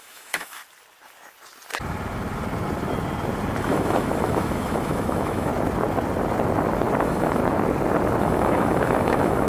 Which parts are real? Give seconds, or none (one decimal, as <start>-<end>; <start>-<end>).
0.6-3.6; 5.5-7.0; 7.4-8.2